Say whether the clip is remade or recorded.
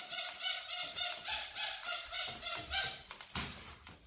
recorded